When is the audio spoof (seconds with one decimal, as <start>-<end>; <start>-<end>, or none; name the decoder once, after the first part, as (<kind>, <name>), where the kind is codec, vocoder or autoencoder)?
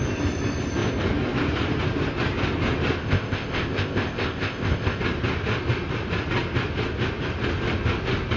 3.0-5.0 (codec, ZipCodec)